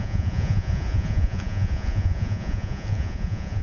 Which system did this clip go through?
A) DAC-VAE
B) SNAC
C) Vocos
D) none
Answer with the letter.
C